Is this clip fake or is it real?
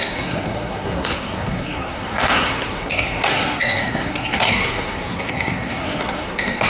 fake